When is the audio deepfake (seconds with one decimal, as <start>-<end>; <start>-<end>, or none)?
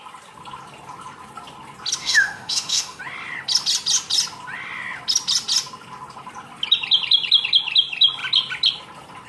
2.0-3.0